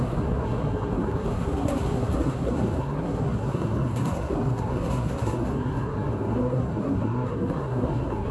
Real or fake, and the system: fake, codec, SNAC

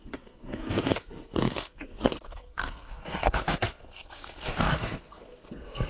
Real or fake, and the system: fake, codec, SNAC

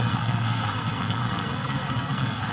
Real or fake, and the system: fake, codec, SNAC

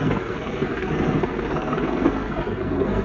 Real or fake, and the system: fake, codec, SNAC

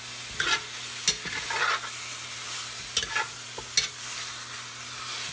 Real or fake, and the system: real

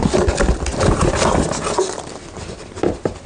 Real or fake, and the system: real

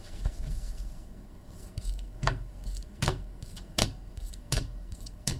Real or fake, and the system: fake, codec, SNAC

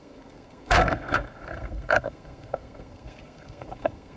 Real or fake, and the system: fake, codec, SNAC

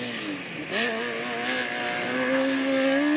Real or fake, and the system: real